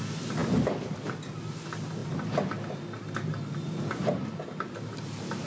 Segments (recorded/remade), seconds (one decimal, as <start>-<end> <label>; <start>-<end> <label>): 0.0-5.5 recorded